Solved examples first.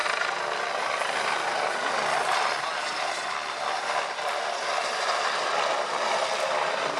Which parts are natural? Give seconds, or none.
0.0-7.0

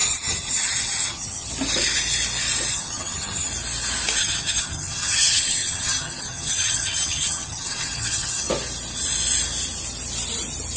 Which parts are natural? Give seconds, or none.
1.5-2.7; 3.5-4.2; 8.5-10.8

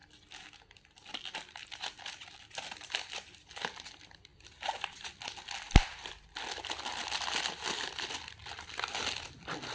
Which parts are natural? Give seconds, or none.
0.0-4.3; 4.8-5.9; 6.6-9.7

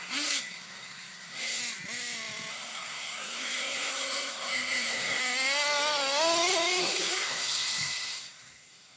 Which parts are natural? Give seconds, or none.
1.6-2.5; 5.2-6.8

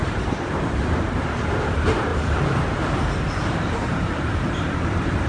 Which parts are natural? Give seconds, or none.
1.4-2.1

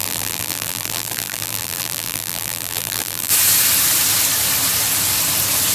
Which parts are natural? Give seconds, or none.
3.3-5.7

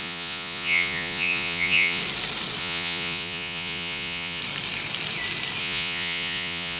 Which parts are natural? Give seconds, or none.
2.0-2.6; 4.4-5.6

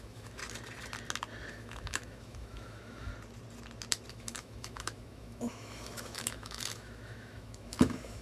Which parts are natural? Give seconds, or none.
0.4-1.5; 3.1-4.1